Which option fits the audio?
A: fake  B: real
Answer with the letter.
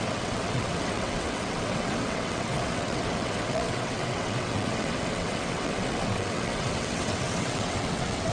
A